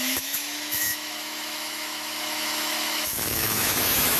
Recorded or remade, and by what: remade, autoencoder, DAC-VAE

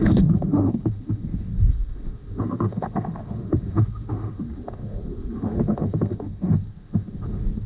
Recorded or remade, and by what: remade, autoencoder, DAC-VAE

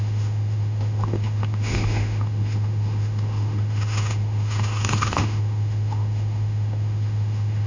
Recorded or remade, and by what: remade, autoencoder, DAC-VAE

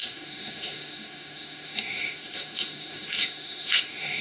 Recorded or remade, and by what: remade, autoencoder, DAC-VAE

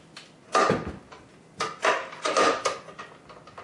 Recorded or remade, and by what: recorded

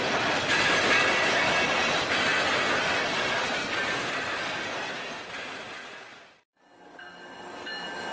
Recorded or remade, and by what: recorded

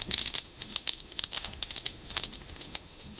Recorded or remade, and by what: remade, autoencoder, DAC-VAE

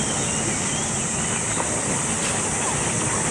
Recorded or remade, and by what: recorded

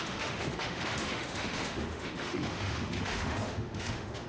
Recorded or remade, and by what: remade, autoencoder, DAC-VAE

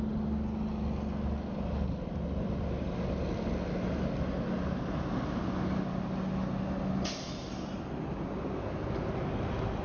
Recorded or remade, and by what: recorded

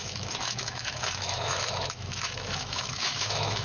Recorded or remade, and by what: remade, autoencoder, DAC-VAE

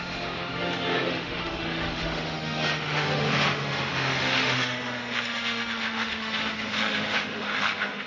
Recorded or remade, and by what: remade, autoencoder, DAC-VAE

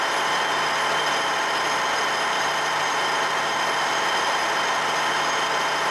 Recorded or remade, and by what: recorded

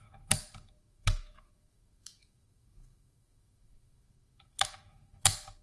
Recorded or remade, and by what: remade, autoencoder, DAC-VAE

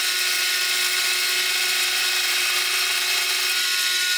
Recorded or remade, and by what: recorded